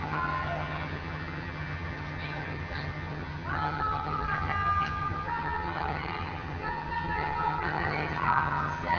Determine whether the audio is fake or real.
fake